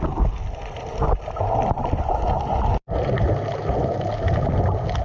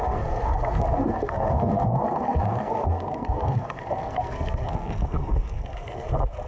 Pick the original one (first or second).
first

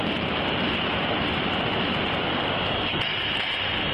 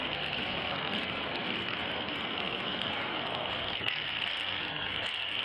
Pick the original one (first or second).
first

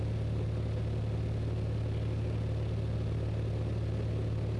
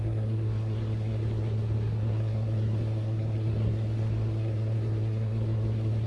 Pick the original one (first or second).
first